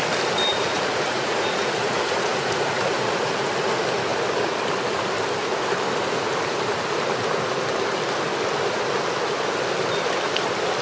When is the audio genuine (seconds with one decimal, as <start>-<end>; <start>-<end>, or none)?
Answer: 0.0-0.5; 3.5-10.8

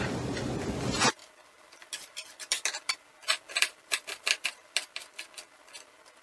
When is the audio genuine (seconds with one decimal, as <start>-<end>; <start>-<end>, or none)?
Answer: 0.0-1.2; 4.5-6.2